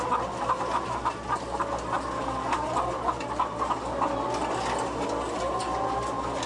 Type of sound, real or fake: real